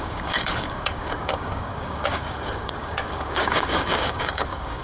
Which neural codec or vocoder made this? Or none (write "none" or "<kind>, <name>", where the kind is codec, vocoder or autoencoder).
codec, DAC